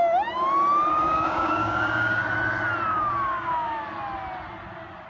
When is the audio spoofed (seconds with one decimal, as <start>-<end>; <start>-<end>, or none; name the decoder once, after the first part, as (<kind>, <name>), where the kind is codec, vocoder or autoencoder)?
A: 0.9-2.2 (codec, DAC); 2.9-3.8